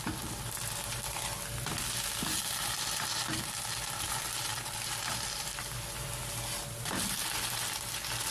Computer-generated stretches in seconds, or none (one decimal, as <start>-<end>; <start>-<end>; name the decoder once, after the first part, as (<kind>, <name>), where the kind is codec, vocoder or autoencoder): 0.0-8.3 (vocoder, BigVGAN v2)